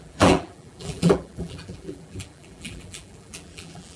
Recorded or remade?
remade